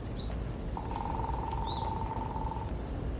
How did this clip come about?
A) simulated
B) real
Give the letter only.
B